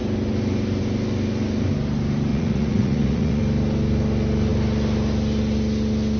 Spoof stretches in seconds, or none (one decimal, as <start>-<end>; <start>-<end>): 2.3-3.4

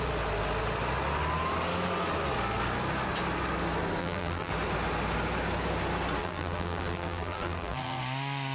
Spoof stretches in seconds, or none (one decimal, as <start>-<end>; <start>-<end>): 4.0-4.5; 6.2-8.0

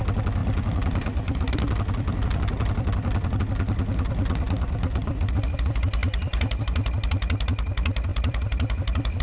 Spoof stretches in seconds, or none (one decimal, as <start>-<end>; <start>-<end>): 0.4-3.4; 8.1-9.2

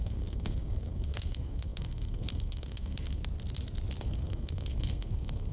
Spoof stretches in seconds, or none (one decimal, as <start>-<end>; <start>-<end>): 0.0-3.2; 4.0-5.5

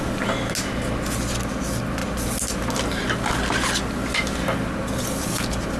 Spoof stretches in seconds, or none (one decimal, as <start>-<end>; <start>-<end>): none